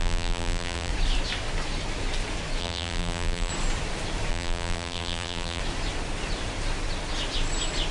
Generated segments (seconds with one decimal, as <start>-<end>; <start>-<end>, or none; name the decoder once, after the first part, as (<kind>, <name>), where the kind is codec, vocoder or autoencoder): 0.0-0.9 (vocoder, BigVGAN v2); 2.6-3.5; 4.3-5.6